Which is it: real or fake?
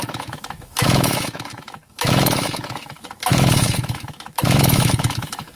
fake